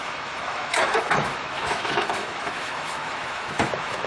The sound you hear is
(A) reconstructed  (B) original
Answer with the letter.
A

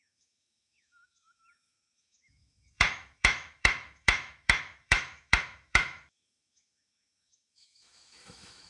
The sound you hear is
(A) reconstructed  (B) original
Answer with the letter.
A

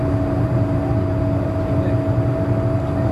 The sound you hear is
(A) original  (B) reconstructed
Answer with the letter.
A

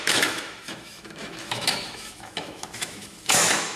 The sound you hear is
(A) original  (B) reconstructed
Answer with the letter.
B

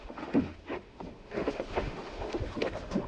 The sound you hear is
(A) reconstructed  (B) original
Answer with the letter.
A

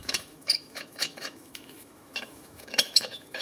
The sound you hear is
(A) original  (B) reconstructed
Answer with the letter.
B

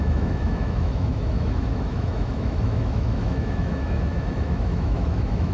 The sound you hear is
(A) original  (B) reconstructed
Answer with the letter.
B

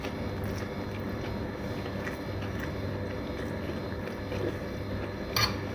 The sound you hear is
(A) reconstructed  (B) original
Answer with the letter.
B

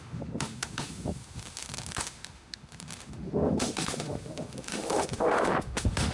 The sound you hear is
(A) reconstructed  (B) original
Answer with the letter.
A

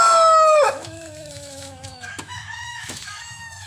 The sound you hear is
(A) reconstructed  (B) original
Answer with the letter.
A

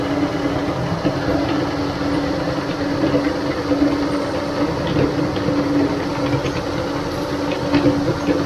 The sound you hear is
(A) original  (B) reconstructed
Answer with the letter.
A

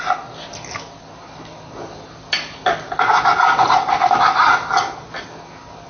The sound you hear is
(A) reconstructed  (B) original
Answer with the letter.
B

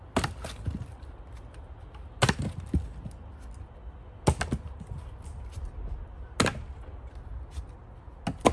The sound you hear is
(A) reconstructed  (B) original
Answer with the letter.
B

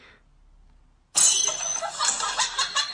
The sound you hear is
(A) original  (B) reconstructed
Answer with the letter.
A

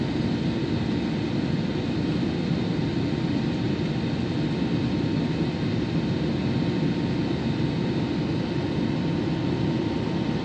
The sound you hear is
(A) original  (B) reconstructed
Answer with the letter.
A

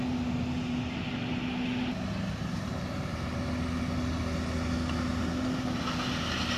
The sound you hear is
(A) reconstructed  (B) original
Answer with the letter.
B